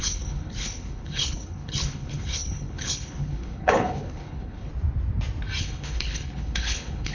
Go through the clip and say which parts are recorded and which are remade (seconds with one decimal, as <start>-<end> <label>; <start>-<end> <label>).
0.0-4.7 remade; 4.7-5.6 recorded; 5.6-7.1 remade